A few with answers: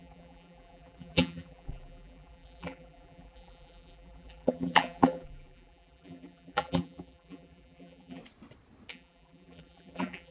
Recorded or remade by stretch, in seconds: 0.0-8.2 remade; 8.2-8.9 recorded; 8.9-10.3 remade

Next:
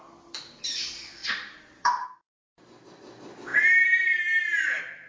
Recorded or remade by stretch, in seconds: 0.0-1.2 recorded; 1.2-2.9 remade; 2.9-3.5 recorded; 3.5-4.2 remade; 4.2-5.1 recorded

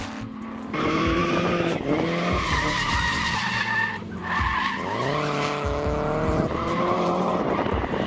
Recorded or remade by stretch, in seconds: 0.0-4.2 remade; 4.2-6.3 recorded; 6.3-8.1 remade

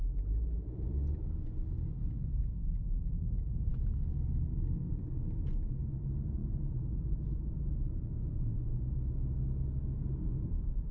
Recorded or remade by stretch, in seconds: 0.0-2.4 remade; 2.4-3.3 recorded; 3.3-3.7 remade; 3.7-4.9 recorded; 4.9-8.7 remade; 8.7-10.0 recorded; 10.0-10.9 remade

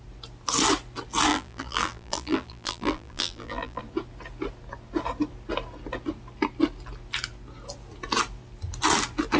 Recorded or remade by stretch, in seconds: 0.0-1.3 recorded; 1.3-3.8 remade; 3.8-9.4 recorded